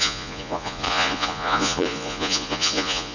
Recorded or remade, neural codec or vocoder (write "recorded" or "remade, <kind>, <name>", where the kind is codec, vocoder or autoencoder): remade, vocoder, Vocos